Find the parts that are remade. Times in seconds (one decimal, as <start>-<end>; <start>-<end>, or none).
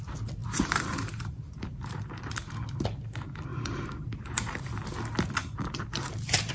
0.4-2.2; 3.5-4.6; 5.4-6.5